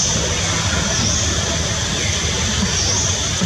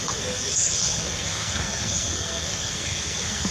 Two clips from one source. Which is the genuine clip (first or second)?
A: first